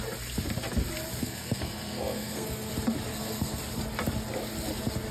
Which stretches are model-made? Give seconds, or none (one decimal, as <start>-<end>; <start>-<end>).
1.2-2.7; 3.1-3.6